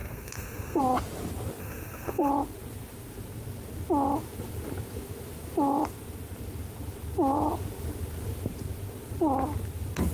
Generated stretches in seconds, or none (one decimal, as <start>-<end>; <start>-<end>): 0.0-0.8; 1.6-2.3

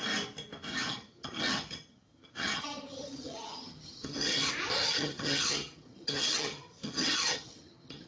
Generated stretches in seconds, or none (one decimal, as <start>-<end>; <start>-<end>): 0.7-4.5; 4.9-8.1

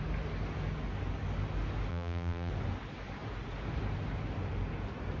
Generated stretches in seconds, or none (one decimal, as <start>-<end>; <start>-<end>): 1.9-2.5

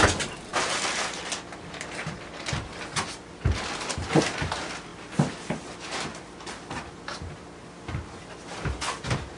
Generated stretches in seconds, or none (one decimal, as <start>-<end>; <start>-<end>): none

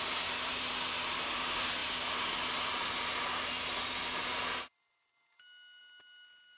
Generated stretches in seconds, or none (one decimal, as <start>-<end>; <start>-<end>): none

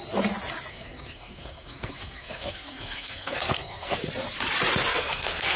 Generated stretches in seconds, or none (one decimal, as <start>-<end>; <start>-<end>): 0.7-4.1; 4.9-5.6